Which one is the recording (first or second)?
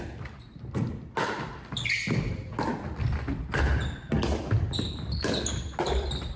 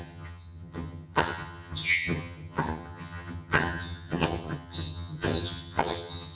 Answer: first